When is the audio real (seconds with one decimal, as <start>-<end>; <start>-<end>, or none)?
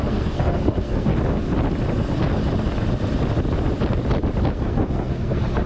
1.1-4.5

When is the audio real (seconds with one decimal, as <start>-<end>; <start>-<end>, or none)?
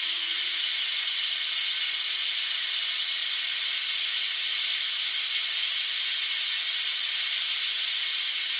0.0-8.6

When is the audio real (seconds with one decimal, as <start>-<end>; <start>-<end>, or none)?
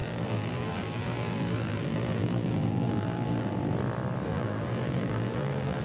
3.5-4.3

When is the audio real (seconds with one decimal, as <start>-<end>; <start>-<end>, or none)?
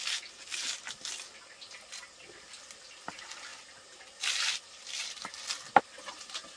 0.0-6.6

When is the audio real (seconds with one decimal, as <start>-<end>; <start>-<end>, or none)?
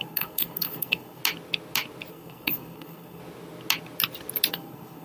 1.2-2.1; 3.2-4.5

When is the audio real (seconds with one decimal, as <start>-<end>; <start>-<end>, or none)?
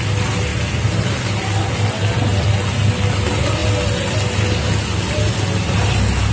0.0-6.3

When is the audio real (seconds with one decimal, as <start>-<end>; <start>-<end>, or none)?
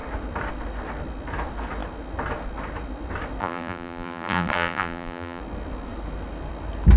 0.0-3.4; 5.4-7.0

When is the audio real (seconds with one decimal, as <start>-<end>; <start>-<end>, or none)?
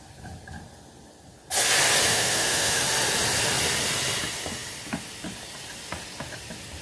0.0-2.1; 2.8-6.8